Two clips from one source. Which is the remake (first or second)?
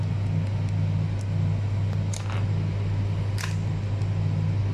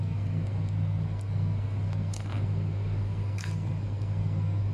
second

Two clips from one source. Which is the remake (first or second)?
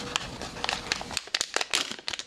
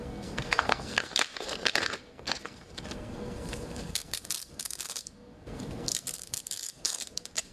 second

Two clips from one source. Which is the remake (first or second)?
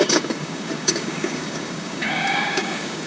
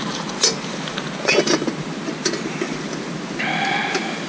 first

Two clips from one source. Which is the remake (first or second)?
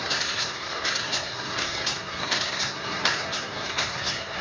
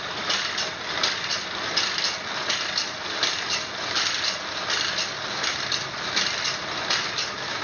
first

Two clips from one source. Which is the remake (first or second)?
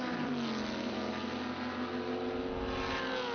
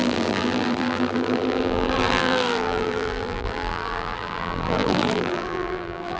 second